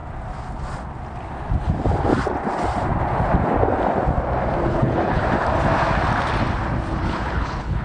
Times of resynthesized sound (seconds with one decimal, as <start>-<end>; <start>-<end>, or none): 4.7-5.2; 7.0-7.8